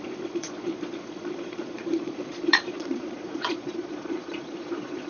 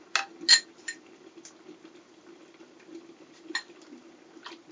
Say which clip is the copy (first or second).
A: first